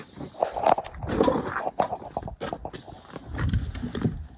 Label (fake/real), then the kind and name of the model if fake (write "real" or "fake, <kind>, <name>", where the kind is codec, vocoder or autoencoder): real